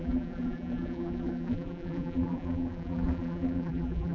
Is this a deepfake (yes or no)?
yes